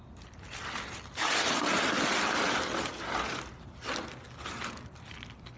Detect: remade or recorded recorded